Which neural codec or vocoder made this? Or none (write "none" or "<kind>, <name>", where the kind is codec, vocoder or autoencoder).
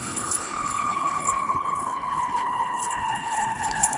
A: codec, HILCodec